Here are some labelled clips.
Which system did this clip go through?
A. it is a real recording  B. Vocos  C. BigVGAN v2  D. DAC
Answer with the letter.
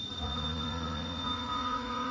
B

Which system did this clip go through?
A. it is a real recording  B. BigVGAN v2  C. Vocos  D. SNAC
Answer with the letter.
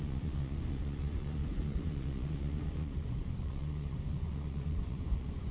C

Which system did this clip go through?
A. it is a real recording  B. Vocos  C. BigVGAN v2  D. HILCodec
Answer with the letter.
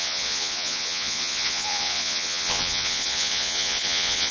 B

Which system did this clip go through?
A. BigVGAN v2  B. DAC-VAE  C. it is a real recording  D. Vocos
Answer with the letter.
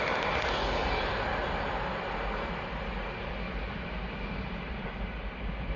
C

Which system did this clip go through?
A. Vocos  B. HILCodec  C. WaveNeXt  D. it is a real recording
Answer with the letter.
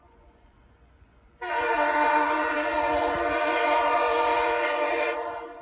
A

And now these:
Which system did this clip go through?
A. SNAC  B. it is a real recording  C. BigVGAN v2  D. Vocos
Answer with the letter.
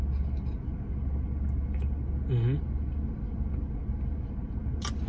B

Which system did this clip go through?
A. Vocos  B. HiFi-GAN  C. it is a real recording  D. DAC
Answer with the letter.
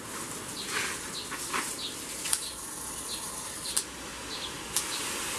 C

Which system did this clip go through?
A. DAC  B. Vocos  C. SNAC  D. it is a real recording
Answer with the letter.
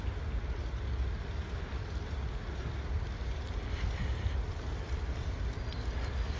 D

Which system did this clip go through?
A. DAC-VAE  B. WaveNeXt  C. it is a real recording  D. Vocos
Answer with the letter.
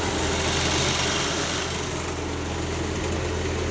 C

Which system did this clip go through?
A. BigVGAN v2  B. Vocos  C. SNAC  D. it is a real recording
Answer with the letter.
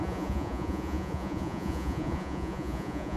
B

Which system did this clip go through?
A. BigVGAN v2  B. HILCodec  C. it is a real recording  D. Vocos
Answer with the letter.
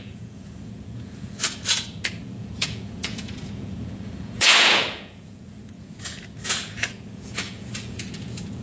D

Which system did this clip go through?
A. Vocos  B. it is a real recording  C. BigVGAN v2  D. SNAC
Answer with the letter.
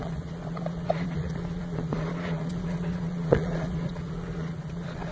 A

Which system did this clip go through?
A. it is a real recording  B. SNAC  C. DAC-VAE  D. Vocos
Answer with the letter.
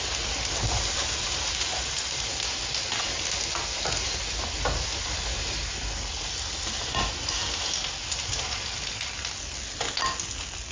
A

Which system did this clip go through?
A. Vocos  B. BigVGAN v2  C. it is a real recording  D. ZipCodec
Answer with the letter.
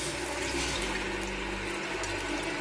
C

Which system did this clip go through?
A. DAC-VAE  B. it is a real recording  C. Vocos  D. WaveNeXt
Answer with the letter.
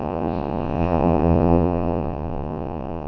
C